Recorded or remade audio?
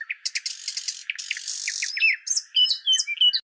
recorded